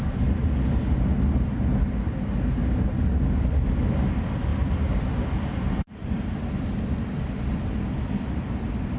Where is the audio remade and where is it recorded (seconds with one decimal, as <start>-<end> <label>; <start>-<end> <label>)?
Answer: 0.0-9.0 recorded